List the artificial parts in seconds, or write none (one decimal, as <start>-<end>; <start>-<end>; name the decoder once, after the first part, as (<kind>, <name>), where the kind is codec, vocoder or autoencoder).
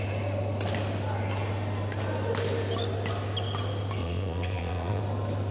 4.0-5.0 (vocoder, Vocos)